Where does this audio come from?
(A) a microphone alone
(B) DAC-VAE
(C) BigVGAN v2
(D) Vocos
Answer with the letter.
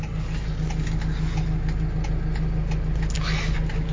A